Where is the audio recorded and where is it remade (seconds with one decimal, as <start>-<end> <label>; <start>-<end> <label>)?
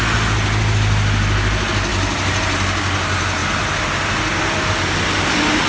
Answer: 0.0-5.7 recorded